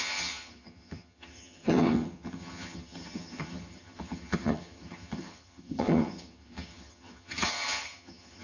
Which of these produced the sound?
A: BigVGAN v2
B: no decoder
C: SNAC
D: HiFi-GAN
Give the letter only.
D